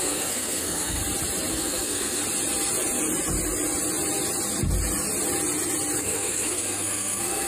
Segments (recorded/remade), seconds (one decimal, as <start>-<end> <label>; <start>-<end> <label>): 0.0-1.0 remade; 1.0-1.5 recorded; 1.5-2.2 remade; 2.2-6.0 recorded; 6.0-7.5 remade